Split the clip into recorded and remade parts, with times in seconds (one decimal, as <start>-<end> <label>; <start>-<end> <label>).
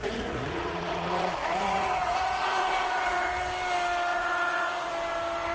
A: 0.0-3.3 remade; 3.3-4.1 recorded; 4.1-4.9 remade; 4.9-5.5 recorded